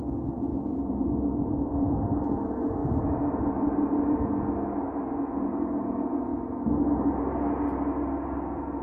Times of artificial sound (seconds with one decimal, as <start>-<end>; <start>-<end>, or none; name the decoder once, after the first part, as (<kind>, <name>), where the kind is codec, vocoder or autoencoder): 0.5-2.0 (vocoder, BigVGAN v2); 2.8-4.2